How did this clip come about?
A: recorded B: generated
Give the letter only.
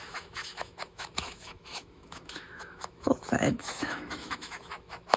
B